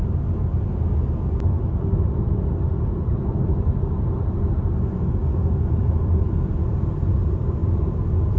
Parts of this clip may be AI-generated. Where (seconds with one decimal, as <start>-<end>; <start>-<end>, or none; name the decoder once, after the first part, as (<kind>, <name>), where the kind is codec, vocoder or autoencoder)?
none